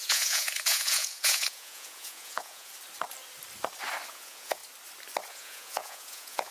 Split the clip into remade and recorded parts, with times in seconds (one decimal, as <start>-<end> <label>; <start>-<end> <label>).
0.0-2.7 remade; 2.7-4.1 recorded; 4.1-4.6 remade; 4.6-5.3 recorded; 5.3-6.5 remade